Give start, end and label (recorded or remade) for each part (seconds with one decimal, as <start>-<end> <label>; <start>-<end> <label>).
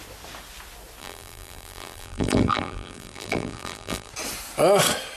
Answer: 0.0-1.0 recorded; 1.0-4.1 remade; 4.1-5.2 recorded